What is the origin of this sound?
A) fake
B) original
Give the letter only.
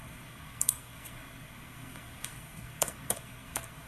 A